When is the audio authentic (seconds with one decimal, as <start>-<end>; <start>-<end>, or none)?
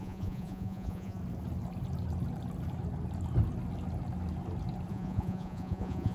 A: 1.2-4.9